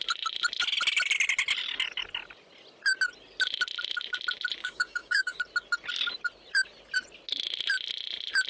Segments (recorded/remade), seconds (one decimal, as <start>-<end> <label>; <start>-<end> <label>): 0.0-4.6 recorded; 4.6-5.4 remade; 5.4-8.5 recorded